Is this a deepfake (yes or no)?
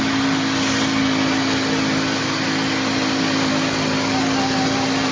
no